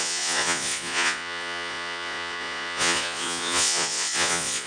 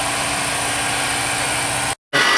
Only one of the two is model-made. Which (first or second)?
first